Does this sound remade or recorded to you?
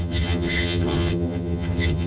remade